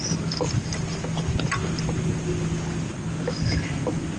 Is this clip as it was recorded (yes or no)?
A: yes